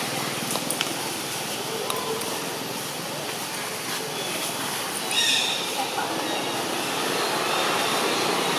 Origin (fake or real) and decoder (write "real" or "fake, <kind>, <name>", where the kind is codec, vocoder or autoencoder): real